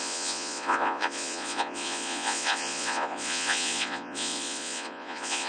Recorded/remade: remade